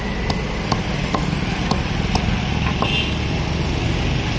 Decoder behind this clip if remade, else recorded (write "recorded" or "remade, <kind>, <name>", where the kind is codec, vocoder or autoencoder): recorded